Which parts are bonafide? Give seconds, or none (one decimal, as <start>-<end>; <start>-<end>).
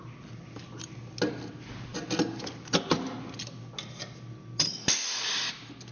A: 0.0-5.9